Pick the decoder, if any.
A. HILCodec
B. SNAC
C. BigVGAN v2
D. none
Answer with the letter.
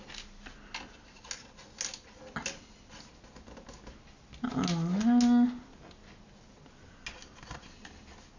D